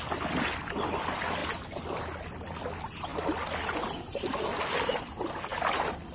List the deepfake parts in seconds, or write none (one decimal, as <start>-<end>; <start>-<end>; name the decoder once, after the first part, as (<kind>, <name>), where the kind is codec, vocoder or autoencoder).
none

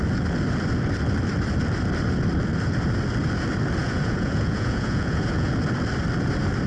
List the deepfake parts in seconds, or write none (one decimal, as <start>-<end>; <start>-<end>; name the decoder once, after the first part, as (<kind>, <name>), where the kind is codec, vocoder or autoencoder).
3.8-5.5 (vocoder, Vocos)

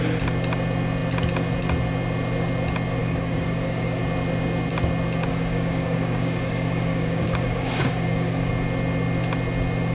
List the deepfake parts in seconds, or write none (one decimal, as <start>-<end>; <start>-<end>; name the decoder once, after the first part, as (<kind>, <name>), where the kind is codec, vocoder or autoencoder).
3.0-4.0 (codec, DAC); 5.2-8.5

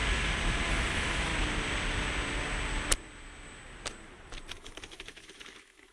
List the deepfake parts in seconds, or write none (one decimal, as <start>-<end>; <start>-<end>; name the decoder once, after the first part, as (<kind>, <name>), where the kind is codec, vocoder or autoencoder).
0.7-1.3 (autoencoder, DAC-VAE); 4.5-5.9

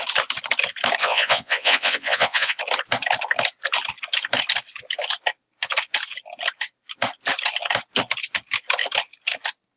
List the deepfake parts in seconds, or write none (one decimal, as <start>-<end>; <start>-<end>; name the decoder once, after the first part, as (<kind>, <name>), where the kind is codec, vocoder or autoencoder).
1.0-2.6 (vocoder, Vocos)

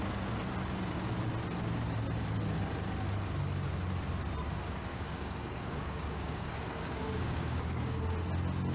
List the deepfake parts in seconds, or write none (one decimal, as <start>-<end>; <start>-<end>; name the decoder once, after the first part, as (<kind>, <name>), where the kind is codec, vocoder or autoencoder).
4.9-8.0 (codec, DAC)